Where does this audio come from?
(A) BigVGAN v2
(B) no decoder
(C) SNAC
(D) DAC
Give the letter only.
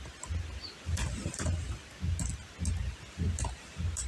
B